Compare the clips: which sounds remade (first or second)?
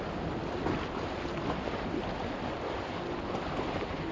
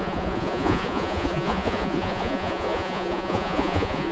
second